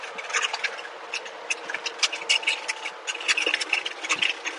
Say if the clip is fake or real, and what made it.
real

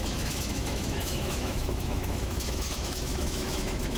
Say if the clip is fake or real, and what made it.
fake, autoencoder, DAC-VAE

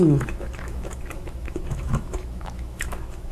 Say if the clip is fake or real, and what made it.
fake, autoencoder, DAC-VAE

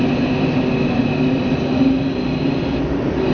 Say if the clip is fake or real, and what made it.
real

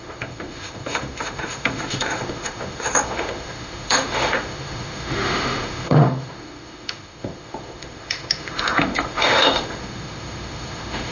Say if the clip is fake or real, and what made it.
fake, autoencoder, DAC-VAE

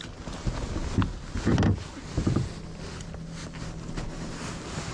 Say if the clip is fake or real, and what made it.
real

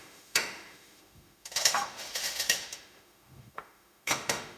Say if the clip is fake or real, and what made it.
fake, autoencoder, DAC-VAE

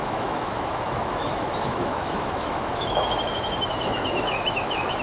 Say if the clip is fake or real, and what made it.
fake, autoencoder, DAC-VAE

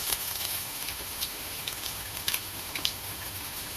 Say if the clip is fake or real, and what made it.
fake, autoencoder, DAC-VAE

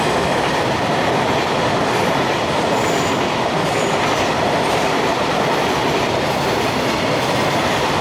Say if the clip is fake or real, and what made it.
real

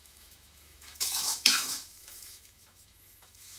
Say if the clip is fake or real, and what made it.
fake, autoencoder, DAC-VAE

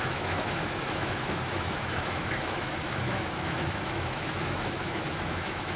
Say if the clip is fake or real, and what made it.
fake, autoencoder, DAC-VAE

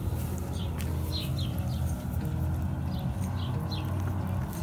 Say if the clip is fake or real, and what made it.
real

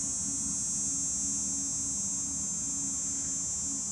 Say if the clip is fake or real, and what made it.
real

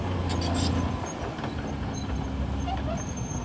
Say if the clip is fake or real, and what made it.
real